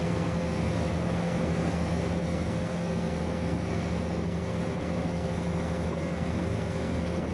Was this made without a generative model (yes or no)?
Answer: no